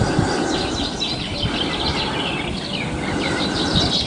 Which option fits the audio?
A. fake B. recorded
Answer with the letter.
B